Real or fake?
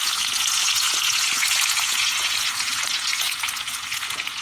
fake